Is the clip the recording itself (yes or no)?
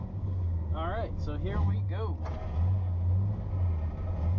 yes